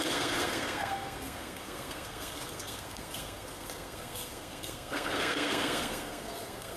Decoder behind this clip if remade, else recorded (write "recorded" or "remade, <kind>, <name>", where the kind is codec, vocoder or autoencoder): remade, codec, SNAC